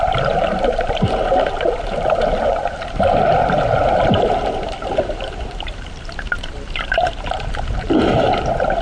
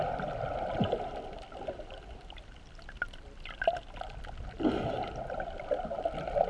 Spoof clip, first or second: first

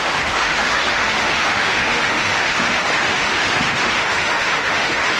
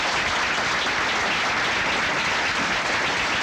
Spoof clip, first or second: first